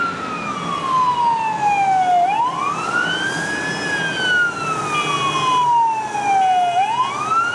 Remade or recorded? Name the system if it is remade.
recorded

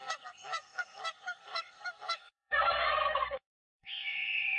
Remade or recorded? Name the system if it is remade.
remade, codec, SNAC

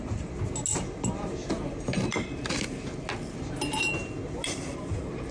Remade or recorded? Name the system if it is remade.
recorded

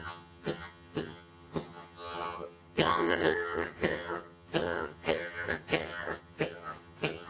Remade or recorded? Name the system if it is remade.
remade, vocoder, HiFi-GAN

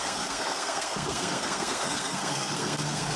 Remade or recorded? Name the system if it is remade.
remade, codec, SNAC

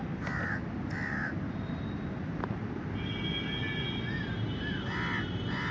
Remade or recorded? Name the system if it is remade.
recorded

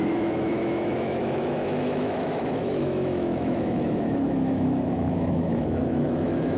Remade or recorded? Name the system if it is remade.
remade, autoencoder, DAC-VAE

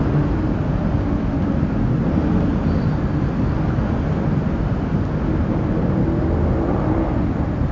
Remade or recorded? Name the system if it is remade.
recorded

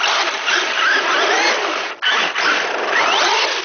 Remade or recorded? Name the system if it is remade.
recorded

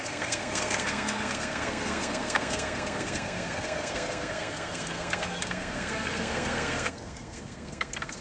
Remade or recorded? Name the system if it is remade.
remade, codec, SNAC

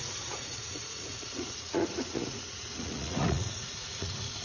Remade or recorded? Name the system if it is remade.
remade, vocoder, Vocos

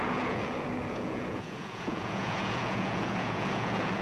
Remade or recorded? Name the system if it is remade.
remade, vocoder, Vocos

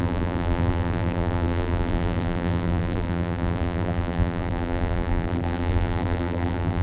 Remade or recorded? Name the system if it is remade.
remade, vocoder, BigVGAN v2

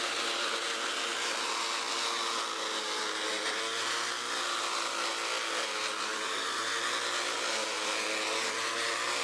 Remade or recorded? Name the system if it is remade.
recorded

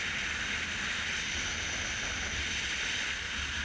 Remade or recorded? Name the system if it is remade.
remade, vocoder, BigVGAN v2